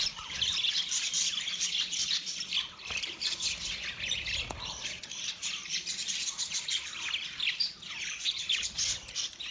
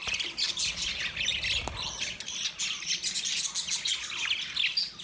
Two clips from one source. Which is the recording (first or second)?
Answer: second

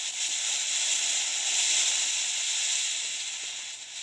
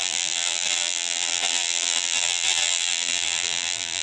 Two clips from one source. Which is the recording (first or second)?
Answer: first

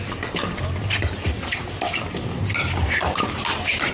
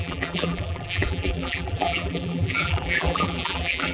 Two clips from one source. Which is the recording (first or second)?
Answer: first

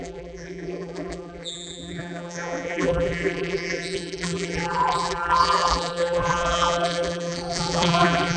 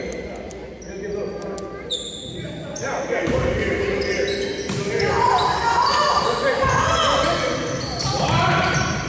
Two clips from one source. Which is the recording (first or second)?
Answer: second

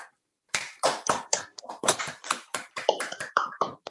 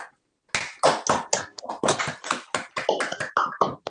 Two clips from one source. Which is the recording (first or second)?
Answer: second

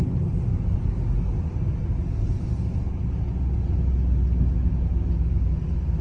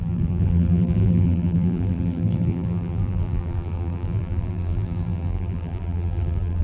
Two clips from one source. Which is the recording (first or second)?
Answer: first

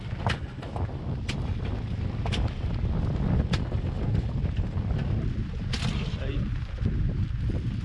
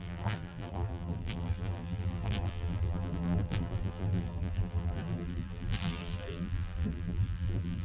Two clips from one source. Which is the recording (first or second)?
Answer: first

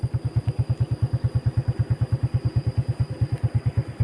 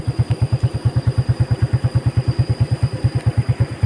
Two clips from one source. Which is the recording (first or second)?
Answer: first